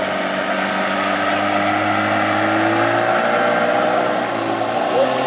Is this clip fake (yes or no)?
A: no